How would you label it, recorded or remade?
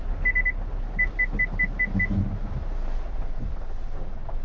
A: recorded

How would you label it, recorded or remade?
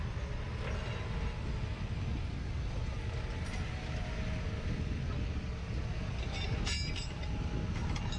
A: recorded